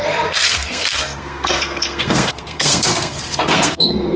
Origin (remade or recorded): remade